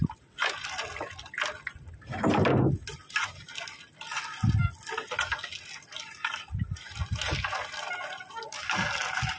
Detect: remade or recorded recorded